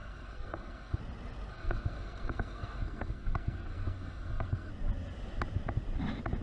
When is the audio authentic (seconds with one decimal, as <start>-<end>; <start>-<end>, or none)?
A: 1.0-1.5; 4.7-6.4